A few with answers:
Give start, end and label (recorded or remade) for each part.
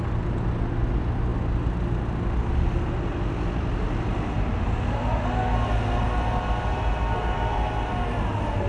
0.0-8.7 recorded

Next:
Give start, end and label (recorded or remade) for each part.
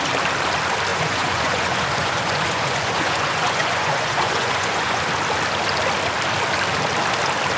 0.0-0.9 recorded; 0.9-5.0 remade; 5.0-7.6 recorded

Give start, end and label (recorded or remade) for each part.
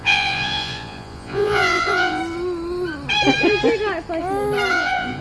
0.0-2.2 remade; 2.2-4.7 recorded; 4.7-5.2 remade